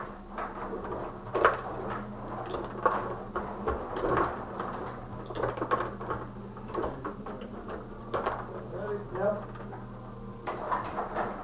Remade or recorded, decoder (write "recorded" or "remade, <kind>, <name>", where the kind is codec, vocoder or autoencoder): recorded